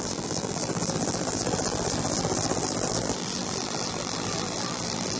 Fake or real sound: fake